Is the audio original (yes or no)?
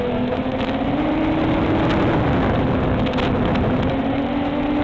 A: yes